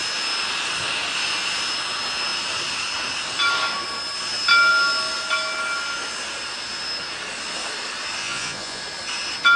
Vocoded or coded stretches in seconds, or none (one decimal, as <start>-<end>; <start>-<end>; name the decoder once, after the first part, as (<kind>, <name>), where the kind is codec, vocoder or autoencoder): 8.2-8.8 (vocoder, Vocos)